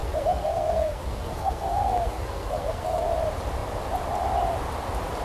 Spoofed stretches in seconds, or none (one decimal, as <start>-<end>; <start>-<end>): 0.0-3.1